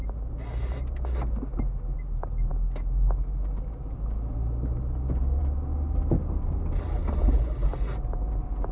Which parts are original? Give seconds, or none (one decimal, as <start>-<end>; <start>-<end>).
0.0-8.7